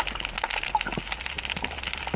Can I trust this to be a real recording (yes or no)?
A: yes